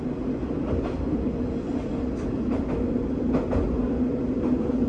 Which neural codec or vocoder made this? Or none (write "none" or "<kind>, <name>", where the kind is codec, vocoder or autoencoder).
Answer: none